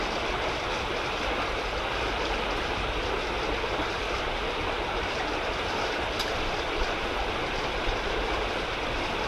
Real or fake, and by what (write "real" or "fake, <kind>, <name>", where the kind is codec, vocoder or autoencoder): real